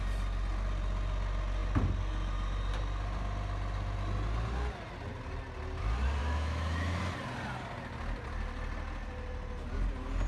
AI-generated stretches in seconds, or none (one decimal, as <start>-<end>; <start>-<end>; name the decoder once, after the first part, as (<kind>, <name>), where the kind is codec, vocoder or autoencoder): 6.2-7.0 (autoencoder, DAC-VAE)

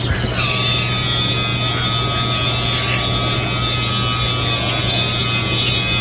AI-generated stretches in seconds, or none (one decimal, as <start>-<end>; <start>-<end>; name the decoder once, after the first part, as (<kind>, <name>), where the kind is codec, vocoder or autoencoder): none

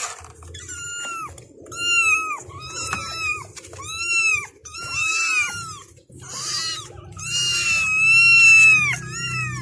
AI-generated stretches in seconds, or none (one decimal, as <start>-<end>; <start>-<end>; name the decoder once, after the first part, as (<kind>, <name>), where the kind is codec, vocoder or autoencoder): 3.3-5.3 (vocoder, BigVGAN v2)

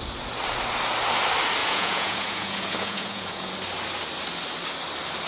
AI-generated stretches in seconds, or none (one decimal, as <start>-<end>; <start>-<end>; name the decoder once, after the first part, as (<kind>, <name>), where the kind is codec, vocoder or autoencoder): 1.6-3.5 (vocoder, Vocos)